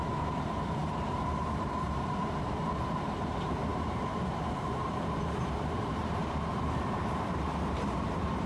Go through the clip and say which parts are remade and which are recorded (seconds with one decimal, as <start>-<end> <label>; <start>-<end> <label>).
0.0-8.5 remade